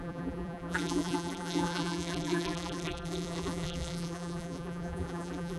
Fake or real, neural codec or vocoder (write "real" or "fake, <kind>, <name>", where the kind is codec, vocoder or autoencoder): fake, vocoder, BigVGAN v2